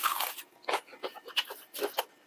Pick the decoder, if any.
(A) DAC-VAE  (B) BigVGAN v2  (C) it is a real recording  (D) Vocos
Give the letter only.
C